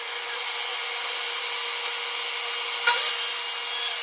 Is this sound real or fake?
real